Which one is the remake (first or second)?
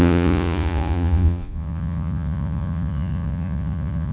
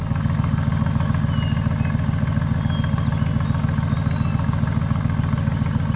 first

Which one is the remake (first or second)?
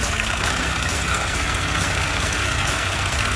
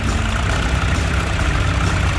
first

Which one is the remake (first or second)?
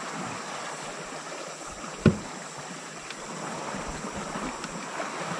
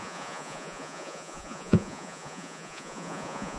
second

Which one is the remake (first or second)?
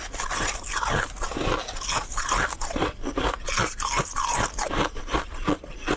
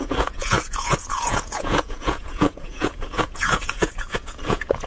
second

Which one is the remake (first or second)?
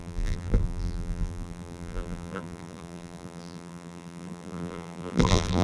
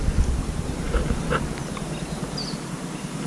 first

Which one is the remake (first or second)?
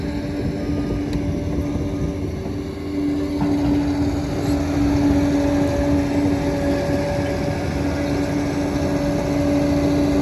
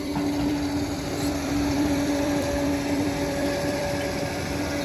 second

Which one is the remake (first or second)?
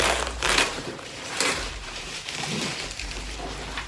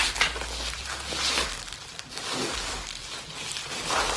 first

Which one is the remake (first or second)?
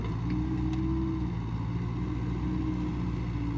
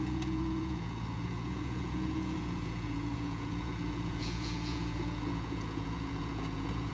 second